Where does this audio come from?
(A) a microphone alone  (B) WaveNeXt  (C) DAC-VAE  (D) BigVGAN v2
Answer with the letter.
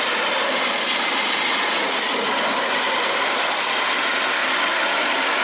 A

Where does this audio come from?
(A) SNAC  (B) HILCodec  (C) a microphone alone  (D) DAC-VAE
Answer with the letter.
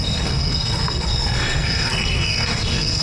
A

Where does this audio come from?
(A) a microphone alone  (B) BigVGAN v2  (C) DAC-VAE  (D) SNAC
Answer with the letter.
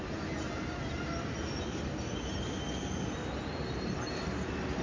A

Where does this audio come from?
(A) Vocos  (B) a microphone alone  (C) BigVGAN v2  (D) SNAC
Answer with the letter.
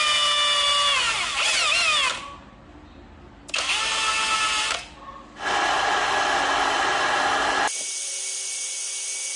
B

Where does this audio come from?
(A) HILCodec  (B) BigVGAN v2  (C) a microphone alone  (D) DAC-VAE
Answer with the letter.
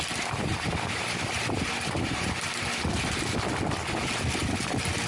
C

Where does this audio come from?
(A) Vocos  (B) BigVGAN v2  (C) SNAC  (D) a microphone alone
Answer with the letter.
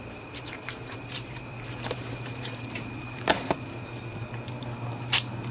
B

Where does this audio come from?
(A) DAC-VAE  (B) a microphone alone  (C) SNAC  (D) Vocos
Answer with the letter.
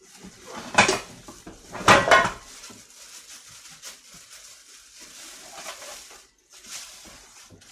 B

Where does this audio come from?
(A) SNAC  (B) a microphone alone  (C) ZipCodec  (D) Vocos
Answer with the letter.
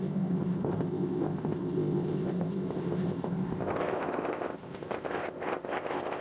C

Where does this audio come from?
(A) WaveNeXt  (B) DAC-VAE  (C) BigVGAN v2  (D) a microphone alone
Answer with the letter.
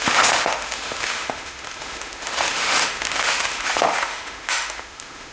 B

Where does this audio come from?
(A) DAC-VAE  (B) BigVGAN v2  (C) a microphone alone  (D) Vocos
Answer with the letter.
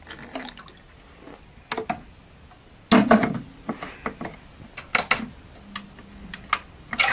C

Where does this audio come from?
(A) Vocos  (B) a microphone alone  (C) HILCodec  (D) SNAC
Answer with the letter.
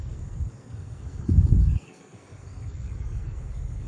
D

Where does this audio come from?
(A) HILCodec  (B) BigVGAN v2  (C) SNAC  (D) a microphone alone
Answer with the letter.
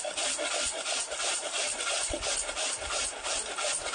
D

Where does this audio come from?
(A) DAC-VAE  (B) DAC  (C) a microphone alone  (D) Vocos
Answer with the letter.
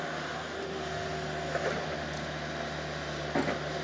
C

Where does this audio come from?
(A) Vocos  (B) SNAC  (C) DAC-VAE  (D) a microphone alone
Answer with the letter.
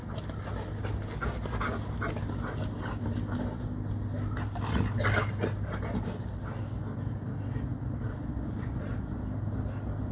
D